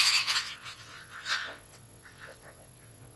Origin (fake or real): fake